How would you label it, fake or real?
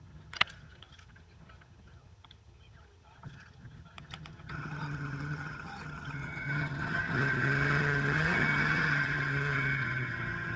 fake